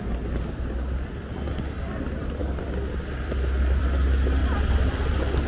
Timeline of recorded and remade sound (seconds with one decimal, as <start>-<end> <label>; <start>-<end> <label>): 0.0-2.4 recorded; 2.4-3.8 remade; 3.8-4.4 recorded; 4.4-5.1 remade; 5.1-5.5 recorded